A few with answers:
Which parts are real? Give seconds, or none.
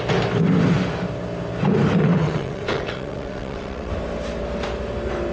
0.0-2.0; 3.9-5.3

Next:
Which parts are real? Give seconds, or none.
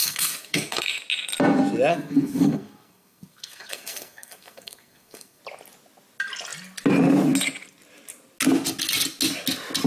1.0-1.9; 5.4-9.9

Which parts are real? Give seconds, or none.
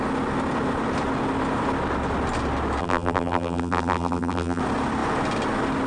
0.0-2.8; 4.6-5.9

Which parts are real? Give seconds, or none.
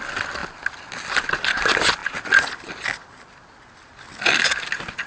0.0-5.1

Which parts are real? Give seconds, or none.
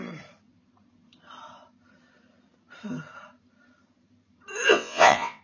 0.0-4.7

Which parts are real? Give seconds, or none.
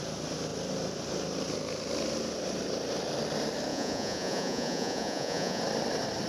0.0-3.7; 5.6-6.3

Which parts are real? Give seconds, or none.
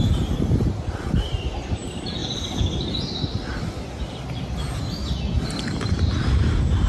2.2-6.3